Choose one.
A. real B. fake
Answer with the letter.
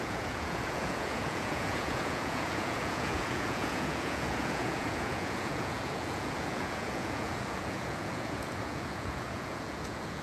B